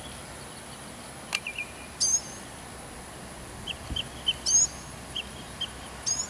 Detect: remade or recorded recorded